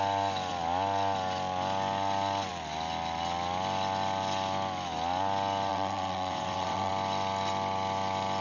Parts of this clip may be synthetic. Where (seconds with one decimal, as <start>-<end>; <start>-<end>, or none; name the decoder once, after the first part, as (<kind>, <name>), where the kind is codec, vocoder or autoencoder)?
5.7-6.9 (vocoder, WaveNeXt)